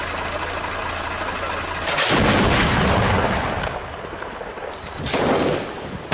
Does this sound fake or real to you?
real